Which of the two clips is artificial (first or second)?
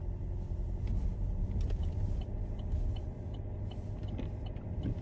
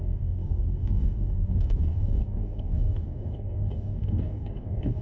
second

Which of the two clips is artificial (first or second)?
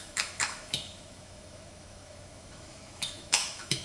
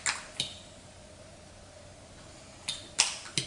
first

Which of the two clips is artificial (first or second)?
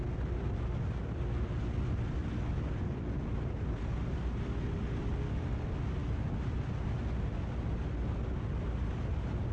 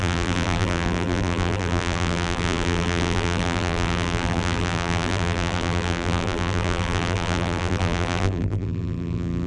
second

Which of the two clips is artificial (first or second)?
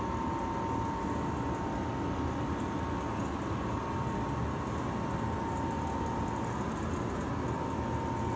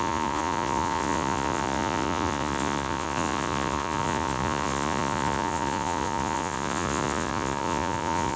second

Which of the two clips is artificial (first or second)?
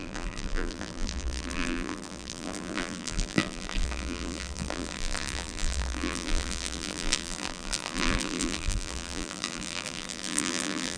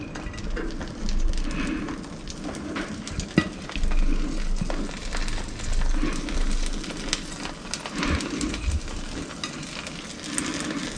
first